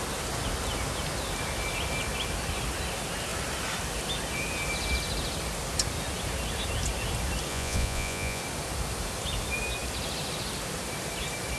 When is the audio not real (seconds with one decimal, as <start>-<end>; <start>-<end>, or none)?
7.5-8.4